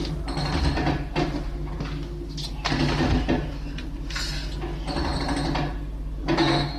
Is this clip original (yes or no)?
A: yes